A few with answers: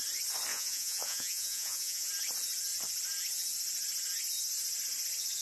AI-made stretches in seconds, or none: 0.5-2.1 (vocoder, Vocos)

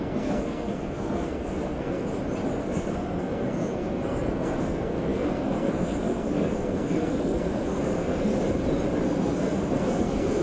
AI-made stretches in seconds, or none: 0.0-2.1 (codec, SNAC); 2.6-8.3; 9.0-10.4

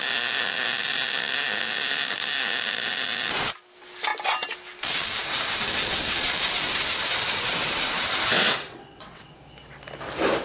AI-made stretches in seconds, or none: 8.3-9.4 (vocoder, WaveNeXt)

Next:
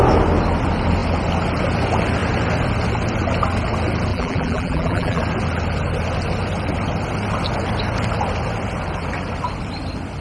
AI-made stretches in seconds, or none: 4.1-5.2 (vocoder, BigVGAN v2)

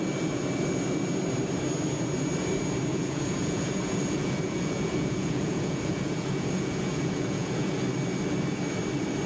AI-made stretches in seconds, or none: 2.9-7.7 (vocoder, Vocos)